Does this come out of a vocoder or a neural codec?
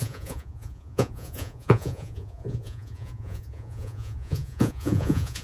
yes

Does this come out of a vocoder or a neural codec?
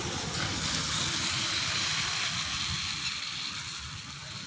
no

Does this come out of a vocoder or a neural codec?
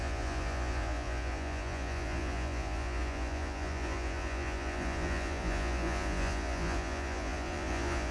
yes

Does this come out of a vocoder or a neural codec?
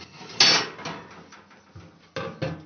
no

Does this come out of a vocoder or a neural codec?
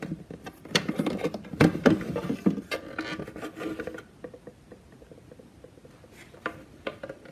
no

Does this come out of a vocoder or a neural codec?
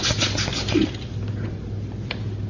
no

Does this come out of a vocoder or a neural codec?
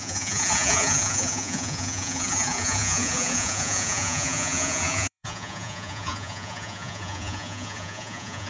yes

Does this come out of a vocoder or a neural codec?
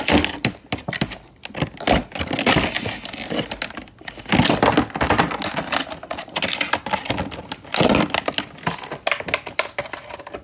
no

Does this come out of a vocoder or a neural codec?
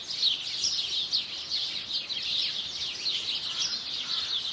no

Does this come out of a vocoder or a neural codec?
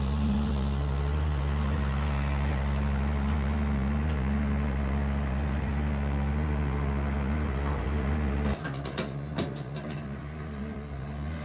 yes